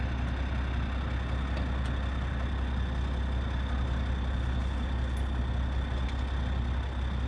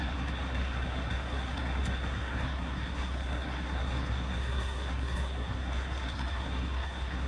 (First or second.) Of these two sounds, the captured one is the first